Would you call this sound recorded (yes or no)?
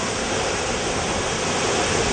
yes